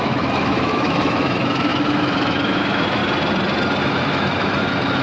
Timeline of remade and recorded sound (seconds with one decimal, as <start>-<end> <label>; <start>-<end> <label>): 0.0-3.0 remade; 3.0-3.8 recorded; 3.8-5.0 remade